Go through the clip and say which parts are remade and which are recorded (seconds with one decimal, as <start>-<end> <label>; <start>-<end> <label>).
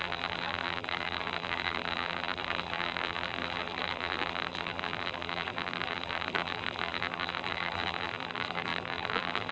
0.0-9.5 remade